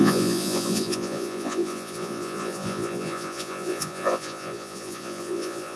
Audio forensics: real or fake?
fake